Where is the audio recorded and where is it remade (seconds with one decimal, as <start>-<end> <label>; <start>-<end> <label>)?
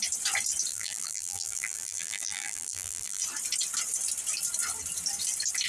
0.0-0.7 recorded; 0.7-3.2 remade; 3.2-5.7 recorded